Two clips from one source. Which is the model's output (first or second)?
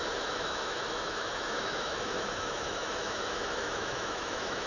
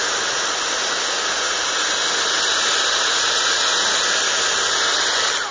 first